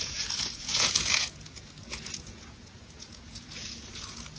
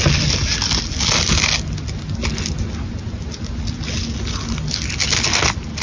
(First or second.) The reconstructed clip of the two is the first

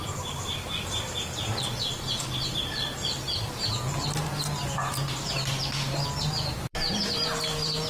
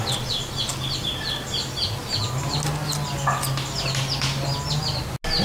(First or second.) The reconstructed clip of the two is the first